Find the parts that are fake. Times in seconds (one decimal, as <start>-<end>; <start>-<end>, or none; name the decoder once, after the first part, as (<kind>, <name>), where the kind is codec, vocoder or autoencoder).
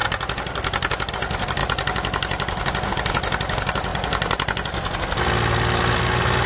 none